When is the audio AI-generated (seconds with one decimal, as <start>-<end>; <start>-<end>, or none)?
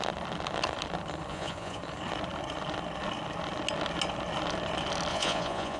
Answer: 1.3-1.8; 5.1-5.8